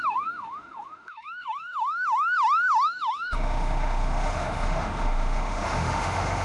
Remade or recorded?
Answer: remade